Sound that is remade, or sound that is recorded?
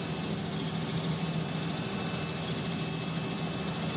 recorded